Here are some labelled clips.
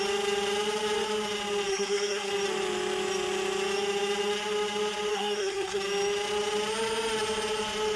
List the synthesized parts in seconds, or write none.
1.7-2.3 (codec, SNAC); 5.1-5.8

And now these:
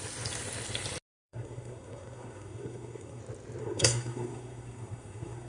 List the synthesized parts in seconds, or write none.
1.2-3.2 (codec, SNAC); 3.6-5.5